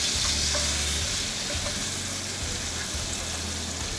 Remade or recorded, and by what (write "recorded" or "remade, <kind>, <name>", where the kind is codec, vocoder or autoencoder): recorded